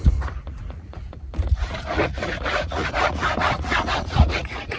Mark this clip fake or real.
fake